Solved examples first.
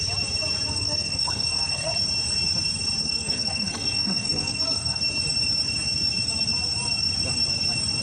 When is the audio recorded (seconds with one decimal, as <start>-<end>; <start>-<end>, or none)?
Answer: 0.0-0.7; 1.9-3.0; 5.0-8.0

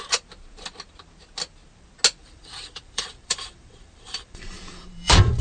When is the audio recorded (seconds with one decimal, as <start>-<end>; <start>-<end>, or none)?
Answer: 0.0-2.2

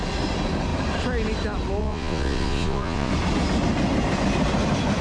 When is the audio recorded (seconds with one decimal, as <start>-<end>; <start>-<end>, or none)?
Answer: 0.0-1.8; 3.1-5.0

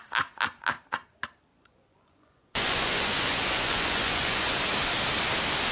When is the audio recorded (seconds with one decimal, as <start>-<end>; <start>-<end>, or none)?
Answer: 0.0-1.5; 4.6-5.7

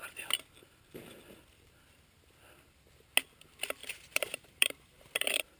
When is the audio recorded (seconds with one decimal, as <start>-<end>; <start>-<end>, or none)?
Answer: 0.0-3.8